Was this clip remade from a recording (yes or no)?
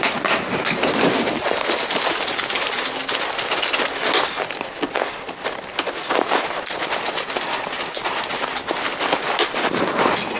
no